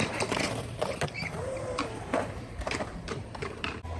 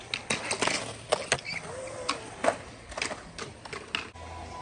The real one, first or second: second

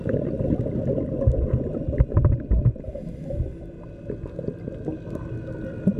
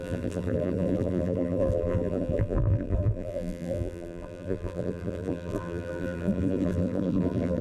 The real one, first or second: first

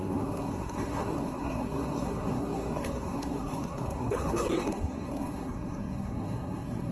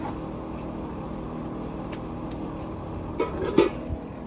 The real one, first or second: second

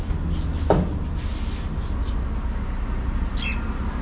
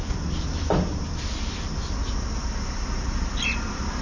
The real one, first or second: first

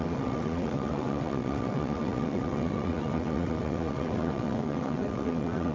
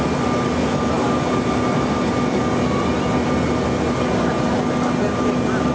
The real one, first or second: second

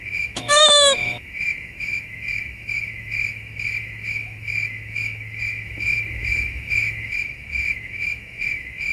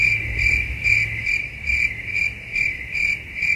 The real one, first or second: second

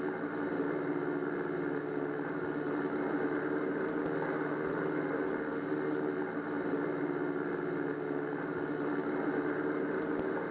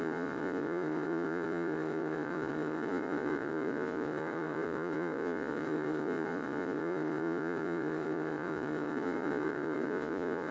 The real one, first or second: first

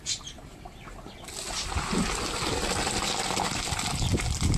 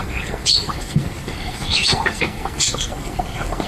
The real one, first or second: first